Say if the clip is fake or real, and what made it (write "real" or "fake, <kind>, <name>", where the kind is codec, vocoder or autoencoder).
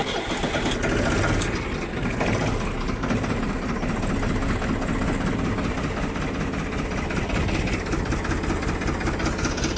real